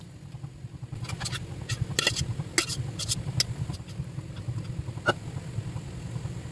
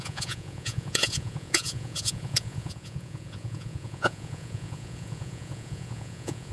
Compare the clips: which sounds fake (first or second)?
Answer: second